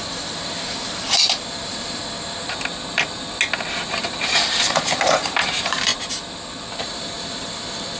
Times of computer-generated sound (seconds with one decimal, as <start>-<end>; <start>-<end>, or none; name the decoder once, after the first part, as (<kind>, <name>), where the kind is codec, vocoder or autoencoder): 0.0-2.0 (vocoder, BigVGAN v2); 3.7-5.9; 6.8-8.0